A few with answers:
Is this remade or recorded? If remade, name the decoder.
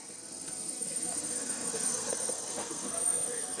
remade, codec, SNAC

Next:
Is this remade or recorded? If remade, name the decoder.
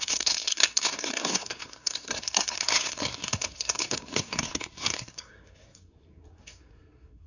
remade, codec, SNAC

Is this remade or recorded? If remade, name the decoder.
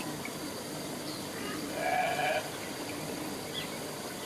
recorded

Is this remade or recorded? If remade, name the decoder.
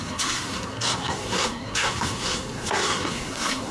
remade, codec, SNAC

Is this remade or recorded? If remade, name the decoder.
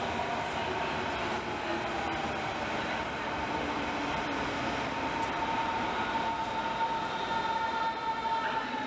recorded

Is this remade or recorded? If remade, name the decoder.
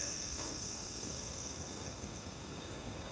remade, codec, SNAC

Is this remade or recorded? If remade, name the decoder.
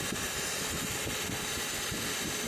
recorded